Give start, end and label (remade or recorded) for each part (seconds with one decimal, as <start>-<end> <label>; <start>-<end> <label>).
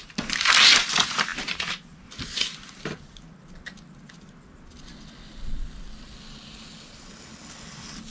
0.0-8.1 recorded